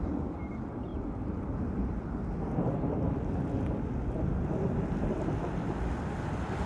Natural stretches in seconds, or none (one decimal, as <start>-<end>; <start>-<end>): 0.0-6.7